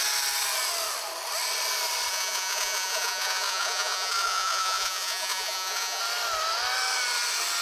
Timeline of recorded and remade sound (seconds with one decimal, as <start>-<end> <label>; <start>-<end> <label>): 0.0-2.1 recorded; 2.1-6.0 remade; 6.0-7.6 recorded